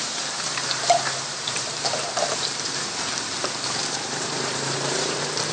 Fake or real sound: fake